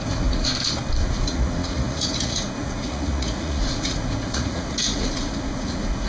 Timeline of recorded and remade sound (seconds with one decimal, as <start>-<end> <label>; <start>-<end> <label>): 0.0-0.5 remade; 0.5-1.0 recorded; 1.0-6.1 remade